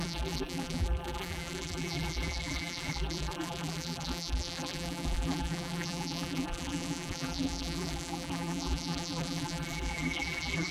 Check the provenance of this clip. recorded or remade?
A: remade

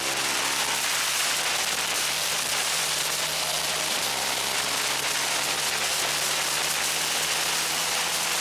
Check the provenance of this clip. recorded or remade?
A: recorded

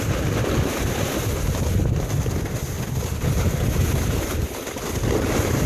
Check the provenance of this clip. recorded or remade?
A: recorded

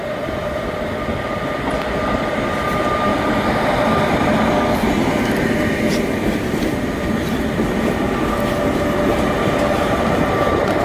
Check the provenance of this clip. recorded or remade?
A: remade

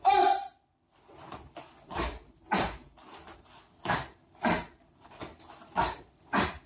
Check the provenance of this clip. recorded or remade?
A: remade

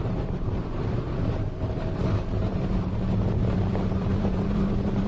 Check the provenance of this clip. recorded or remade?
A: remade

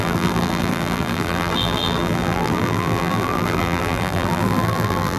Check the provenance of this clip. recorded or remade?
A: remade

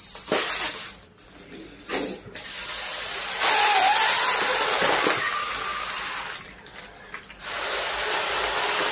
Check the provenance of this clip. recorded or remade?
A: recorded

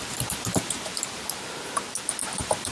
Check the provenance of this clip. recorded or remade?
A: remade